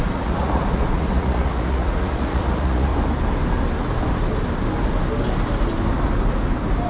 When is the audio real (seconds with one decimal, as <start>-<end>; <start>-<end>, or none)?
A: 2.9-6.9